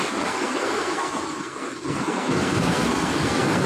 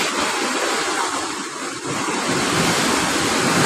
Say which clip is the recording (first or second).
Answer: second